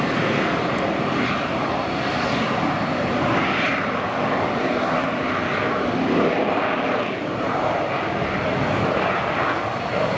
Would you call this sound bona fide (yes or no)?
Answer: yes